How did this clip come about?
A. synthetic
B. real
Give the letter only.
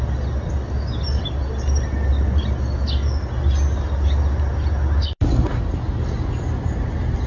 B